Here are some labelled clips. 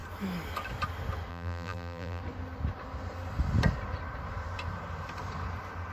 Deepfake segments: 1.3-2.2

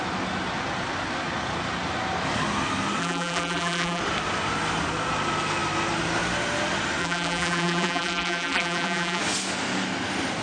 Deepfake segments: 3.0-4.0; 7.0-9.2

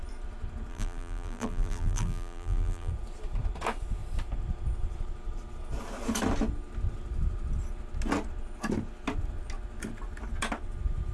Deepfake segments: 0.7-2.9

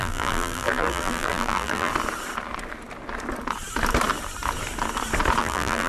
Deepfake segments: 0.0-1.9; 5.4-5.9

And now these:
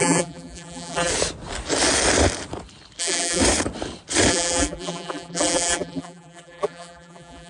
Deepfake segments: 0.0-1.1; 3.0-3.4; 4.3-7.5

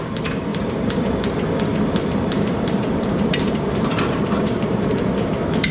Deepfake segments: 0.5-1.1; 1.7-5.1